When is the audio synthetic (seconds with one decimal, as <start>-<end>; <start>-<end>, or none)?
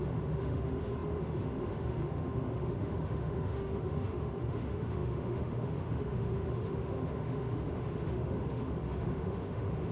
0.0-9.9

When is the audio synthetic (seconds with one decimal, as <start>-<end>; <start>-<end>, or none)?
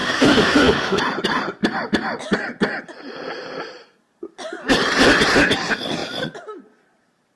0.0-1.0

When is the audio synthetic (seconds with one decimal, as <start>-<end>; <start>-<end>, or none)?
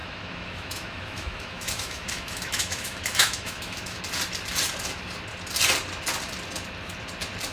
0.0-4.0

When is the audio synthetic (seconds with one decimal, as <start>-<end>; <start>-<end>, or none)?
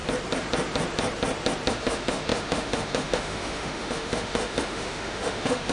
1.7-5.7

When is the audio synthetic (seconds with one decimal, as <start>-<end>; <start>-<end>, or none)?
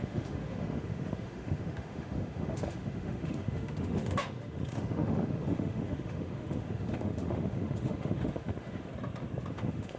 0.0-8.9; 9.5-10.0